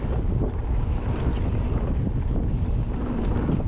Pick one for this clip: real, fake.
real